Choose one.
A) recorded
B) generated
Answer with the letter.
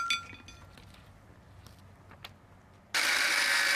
A